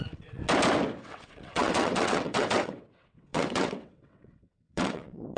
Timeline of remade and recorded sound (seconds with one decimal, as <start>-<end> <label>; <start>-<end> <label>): 0.0-0.4 remade; 0.4-1.0 recorded; 1.0-5.4 remade